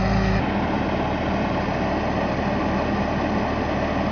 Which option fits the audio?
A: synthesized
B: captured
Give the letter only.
B